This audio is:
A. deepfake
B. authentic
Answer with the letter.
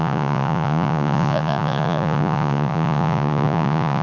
A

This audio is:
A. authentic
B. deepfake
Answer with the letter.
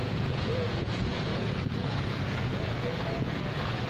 B